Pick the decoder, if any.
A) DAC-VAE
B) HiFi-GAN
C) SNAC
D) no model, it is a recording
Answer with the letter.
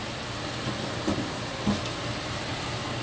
D